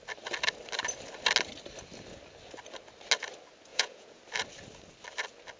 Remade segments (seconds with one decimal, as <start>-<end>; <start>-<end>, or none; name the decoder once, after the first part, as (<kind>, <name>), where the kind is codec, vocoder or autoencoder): 3.7-4.2 (vocoder, Vocos)